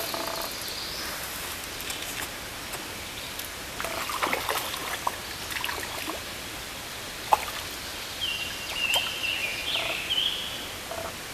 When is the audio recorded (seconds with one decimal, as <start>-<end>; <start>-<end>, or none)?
0.0-9.4; 10.2-11.3